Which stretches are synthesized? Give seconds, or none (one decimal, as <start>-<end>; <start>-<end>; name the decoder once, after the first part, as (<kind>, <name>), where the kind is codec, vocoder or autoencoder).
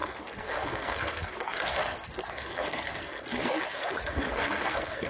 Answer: 0.0-5.1 (codec, SNAC)